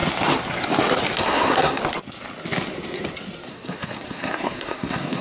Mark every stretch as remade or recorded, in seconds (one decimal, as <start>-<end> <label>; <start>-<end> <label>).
0.0-1.2 recorded; 1.2-1.8 remade; 1.8-3.5 recorded; 3.5-5.2 remade